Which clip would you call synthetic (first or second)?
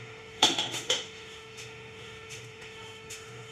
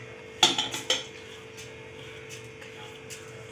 first